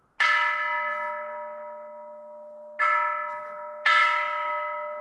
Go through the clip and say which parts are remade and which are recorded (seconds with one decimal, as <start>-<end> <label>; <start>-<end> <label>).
0.0-4.0 recorded; 4.0-5.0 remade